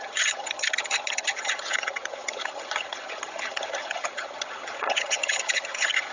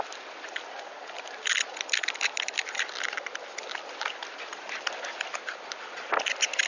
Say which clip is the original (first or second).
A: second